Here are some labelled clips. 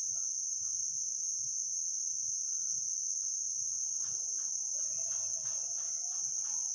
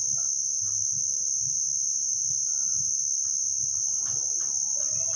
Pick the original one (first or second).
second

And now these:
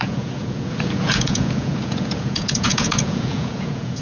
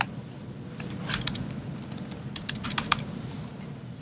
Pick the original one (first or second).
second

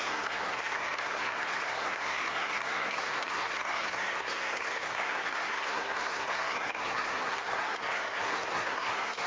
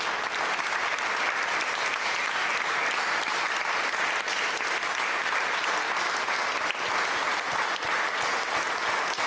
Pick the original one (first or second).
second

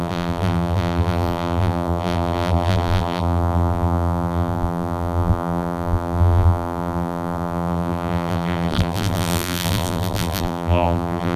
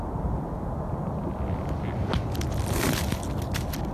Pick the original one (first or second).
second